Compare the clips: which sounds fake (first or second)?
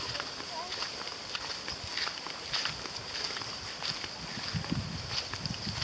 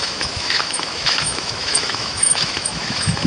second